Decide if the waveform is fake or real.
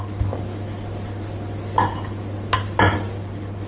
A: real